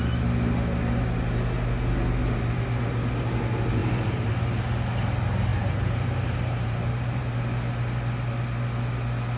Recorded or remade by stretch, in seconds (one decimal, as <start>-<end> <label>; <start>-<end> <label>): 0.0-3.8 recorded; 3.8-4.3 remade; 4.3-5.5 recorded; 5.5-7.4 remade; 7.4-9.4 recorded